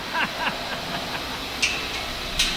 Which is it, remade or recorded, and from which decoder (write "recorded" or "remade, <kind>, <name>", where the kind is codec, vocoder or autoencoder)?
recorded